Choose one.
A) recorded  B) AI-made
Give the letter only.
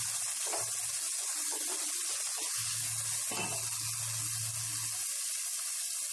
A